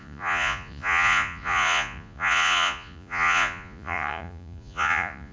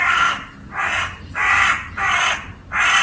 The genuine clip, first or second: second